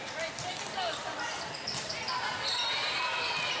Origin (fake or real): fake